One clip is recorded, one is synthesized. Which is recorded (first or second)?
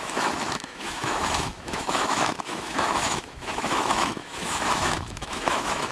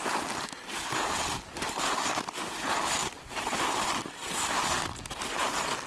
second